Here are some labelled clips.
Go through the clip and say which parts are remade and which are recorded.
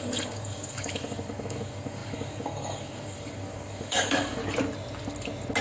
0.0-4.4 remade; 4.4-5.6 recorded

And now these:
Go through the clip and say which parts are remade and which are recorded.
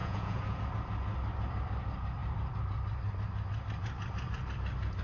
0.0-0.6 remade; 0.6-5.0 recorded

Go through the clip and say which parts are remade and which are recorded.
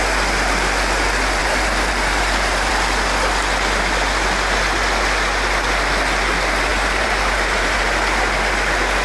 0.0-1.4 recorded; 1.4-2.7 remade; 2.7-6.7 recorded; 6.7-7.8 remade; 7.8-9.0 recorded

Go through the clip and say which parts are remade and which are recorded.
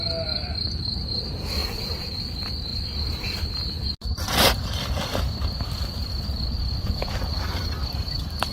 0.0-1.6 recorded; 1.6-2.2 remade; 2.2-2.7 recorded; 2.7-3.9 remade; 3.9-6.0 recorded; 6.0-8.5 remade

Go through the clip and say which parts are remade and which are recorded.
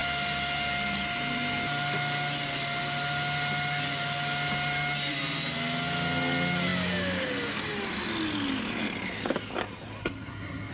0.0-10.0 recorded; 10.0-10.7 remade